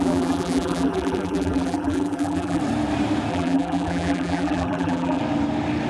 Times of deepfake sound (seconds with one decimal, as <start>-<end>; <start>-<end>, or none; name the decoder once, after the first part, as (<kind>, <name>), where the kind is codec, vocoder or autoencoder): 0.0-2.6 (vocoder, BigVGAN v2); 3.3-5.2